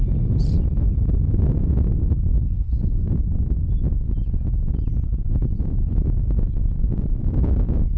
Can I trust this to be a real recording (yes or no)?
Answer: yes